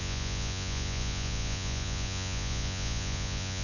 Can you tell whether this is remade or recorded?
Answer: remade